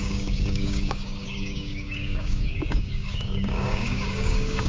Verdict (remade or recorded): remade